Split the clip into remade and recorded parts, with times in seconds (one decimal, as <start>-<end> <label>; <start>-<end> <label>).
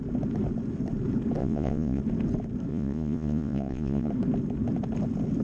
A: 0.0-1.4 recorded; 1.4-2.0 remade; 2.0-2.7 recorded; 2.7-4.1 remade; 4.1-5.4 recorded